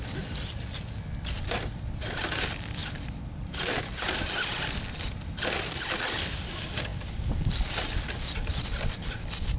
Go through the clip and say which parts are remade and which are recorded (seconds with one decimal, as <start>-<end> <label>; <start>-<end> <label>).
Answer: 0.0-2.8 recorded; 2.8-3.8 remade; 3.8-9.6 recorded